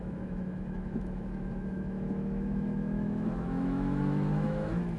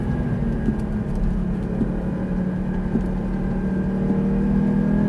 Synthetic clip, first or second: first